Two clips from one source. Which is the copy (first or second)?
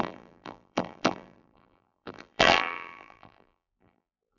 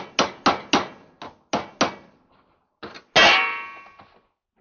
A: first